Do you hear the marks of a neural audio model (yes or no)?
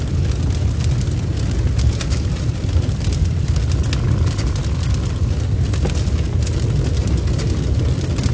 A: no